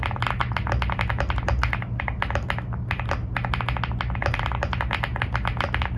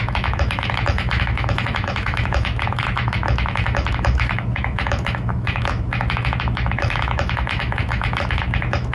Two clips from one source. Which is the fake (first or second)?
second